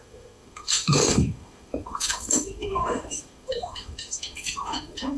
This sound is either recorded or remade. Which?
remade